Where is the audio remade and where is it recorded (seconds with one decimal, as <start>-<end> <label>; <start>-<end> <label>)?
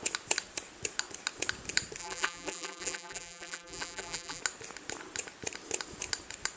0.0-2.0 recorded; 2.0-4.4 remade; 4.4-6.6 recorded